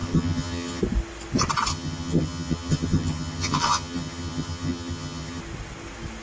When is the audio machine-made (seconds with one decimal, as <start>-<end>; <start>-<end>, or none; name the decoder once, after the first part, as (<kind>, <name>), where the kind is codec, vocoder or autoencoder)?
0.0-0.8 (vocoder, HiFi-GAN); 1.7-5.4